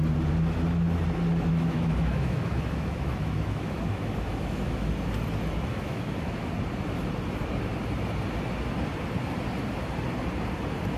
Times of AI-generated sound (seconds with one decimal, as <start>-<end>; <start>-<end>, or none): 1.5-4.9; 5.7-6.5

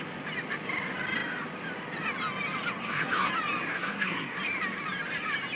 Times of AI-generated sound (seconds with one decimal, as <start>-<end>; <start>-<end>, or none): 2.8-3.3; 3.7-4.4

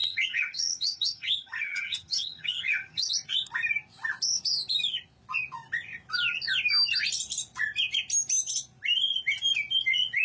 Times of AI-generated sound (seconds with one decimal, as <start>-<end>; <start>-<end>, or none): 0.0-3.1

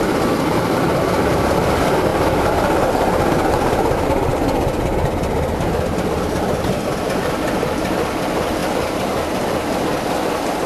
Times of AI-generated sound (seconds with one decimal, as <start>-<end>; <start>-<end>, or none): 0.0-2.1; 3.5-4.3; 6.5-10.7

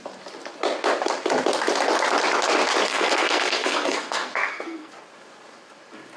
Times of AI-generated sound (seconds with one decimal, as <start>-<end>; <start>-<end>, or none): 2.9-4.9

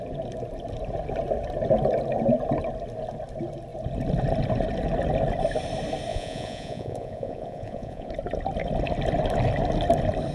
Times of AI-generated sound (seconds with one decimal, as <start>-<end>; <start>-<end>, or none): 6.1-8.1

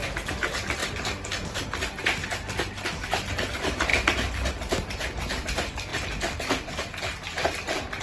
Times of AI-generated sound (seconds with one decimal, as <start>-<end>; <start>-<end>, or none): none